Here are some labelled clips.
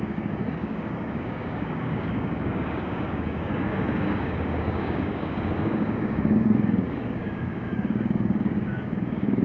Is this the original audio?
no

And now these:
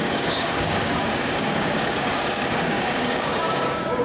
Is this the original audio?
no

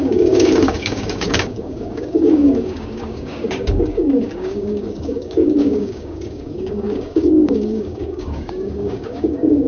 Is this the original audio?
no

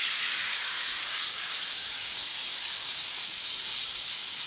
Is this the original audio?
no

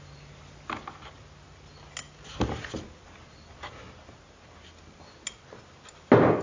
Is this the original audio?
yes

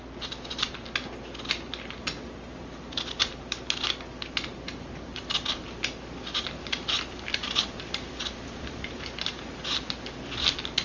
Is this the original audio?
yes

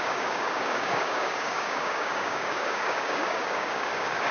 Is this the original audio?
no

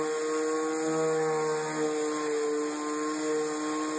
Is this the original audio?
yes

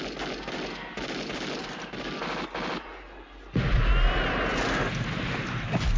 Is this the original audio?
yes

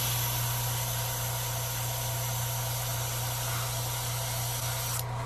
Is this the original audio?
yes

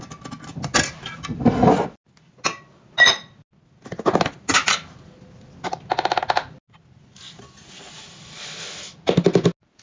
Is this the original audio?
yes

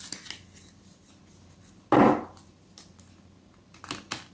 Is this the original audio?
yes